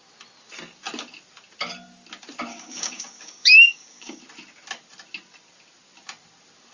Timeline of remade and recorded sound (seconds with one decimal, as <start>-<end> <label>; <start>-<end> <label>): 0.0-2.5 recorded; 2.5-4.2 remade; 4.2-6.7 recorded